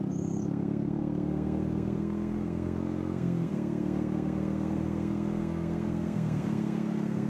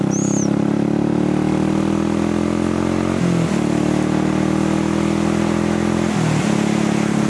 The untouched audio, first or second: second